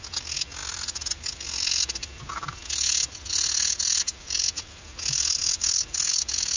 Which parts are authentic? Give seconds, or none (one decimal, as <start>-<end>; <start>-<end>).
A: 0.0-6.6